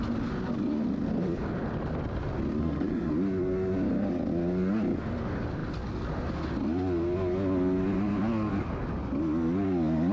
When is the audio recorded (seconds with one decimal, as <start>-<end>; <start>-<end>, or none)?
0.0-2.6; 3.1-10.1